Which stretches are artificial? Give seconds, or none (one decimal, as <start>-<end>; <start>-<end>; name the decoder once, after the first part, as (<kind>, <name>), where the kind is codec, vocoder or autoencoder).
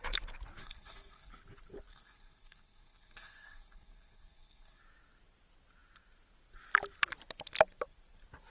0.6-1.3 (codec, SNAC); 1.9-4.8